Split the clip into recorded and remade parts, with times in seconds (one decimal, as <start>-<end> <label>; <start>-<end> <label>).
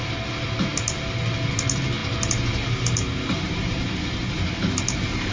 0.0-2.0 recorded; 2.0-5.3 remade